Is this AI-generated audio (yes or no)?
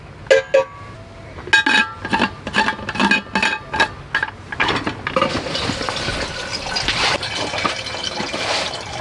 no